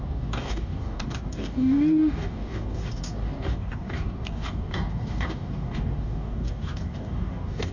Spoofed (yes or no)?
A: yes